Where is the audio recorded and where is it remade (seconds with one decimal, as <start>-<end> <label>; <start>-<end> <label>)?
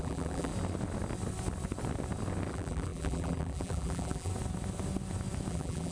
0.0-0.5 remade; 0.5-2.5 recorded; 2.5-4.3 remade; 4.3-5.5 recorded; 5.5-5.9 remade